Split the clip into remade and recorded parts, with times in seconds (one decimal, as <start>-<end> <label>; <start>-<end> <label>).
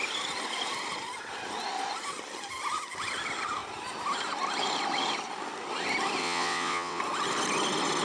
0.0-6.2 recorded; 6.2-7.0 remade; 7.0-8.0 recorded